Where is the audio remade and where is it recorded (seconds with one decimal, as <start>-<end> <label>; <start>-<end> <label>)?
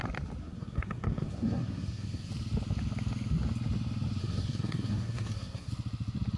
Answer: 0.0-0.4 recorded; 0.4-2.3 remade; 2.3-4.2 recorded; 4.2-5.7 remade; 5.7-6.4 recorded